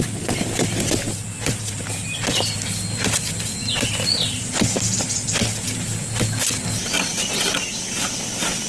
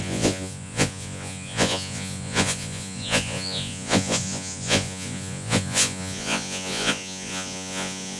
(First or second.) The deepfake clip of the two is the second